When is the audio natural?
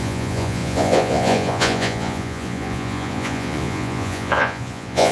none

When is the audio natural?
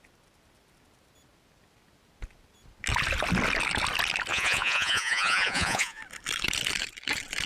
0.0-4.3; 6.0-7.5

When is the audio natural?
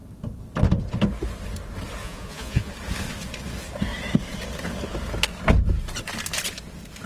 0.0-2.0; 2.7-7.1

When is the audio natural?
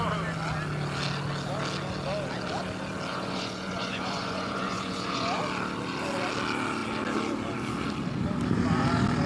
0.0-3.1; 5.4-9.3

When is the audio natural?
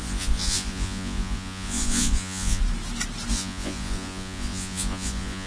2.6-3.3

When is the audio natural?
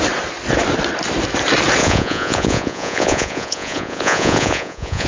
0.0-1.8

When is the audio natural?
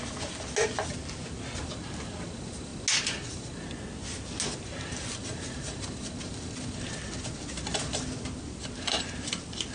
0.0-9.7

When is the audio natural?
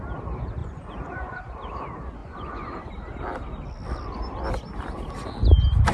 0.0-0.6; 1.4-2.2; 2.7-5.9